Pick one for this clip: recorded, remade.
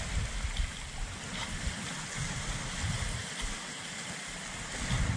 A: recorded